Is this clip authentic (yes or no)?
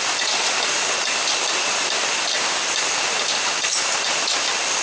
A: yes